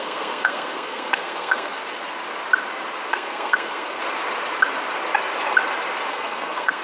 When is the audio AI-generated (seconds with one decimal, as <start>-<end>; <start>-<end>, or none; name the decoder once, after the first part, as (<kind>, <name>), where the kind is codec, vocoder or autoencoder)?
0.0-1.7 (codec, SNAC); 3.1-4.0; 6.1-6.8